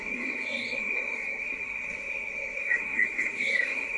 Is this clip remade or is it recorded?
remade